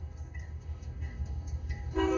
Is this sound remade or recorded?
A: remade